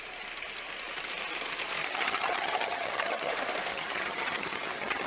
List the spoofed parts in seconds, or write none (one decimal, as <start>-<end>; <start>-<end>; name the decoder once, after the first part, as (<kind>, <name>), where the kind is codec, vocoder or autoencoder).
1.8-3.3 (vocoder, HiFi-GAN); 3.7-5.1